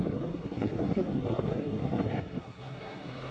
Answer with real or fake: fake